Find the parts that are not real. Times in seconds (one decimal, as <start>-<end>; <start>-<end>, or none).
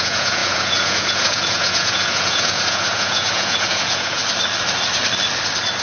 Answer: 0.0-4.2